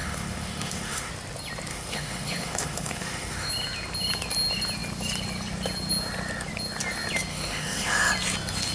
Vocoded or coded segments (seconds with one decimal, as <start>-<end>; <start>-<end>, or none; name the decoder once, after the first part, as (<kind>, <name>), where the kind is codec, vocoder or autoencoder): 0.0-1.1 (autoencoder, DAC-VAE); 1.7-3.5; 7.3-8.1